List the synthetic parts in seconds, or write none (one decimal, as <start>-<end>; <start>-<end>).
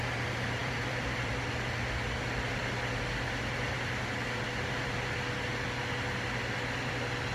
0.6-1.3